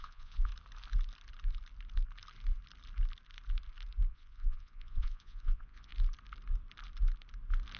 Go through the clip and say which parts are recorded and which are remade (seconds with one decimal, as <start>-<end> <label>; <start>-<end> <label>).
0.0-0.5 remade; 0.5-4.1 recorded; 4.1-5.9 remade; 5.9-7.8 recorded